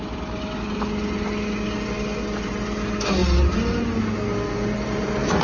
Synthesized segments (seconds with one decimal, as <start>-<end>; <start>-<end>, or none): none